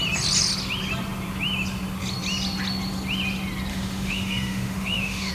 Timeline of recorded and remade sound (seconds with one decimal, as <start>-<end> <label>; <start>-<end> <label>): 0.0-3.7 recorded; 3.7-5.3 remade